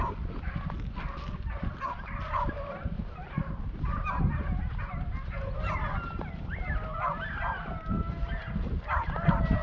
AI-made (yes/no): no